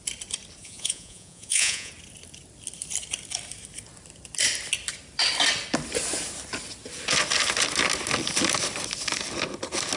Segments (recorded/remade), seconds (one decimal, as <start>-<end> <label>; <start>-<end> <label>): 0.0-0.6 recorded; 0.6-1.9 remade; 1.9-10.0 recorded